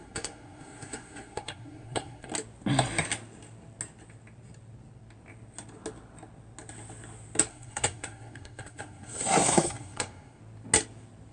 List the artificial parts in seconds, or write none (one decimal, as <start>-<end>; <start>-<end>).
0.0-2.3; 7.5-10.4